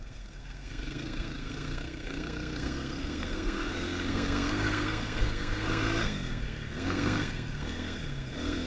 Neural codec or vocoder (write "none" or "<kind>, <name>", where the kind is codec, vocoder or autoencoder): codec, SNAC